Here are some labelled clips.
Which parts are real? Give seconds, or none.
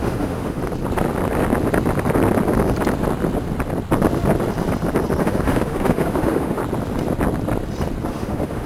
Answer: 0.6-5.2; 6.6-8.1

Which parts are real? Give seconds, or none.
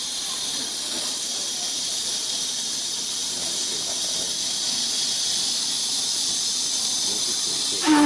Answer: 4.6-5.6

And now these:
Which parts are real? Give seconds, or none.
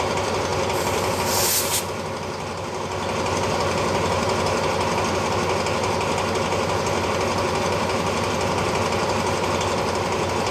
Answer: 0.0-10.5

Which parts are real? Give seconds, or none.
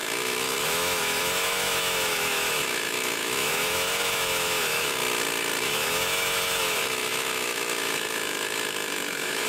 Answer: 5.0-5.6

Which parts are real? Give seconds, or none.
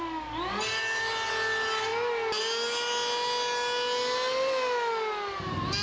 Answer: 0.0-5.8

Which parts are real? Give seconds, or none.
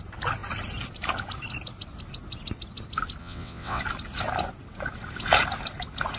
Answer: 0.0-3.2; 3.8-6.2